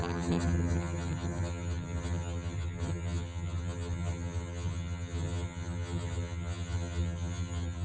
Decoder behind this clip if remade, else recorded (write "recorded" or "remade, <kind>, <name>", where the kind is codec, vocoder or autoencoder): remade, vocoder, HiFi-GAN